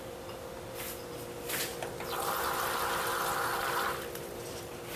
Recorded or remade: recorded